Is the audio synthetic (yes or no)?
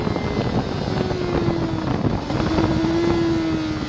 no